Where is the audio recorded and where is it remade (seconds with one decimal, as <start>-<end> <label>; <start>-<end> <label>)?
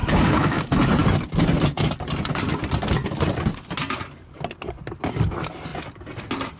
0.0-0.6 remade; 0.6-6.6 recorded